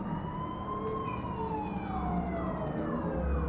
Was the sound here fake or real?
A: real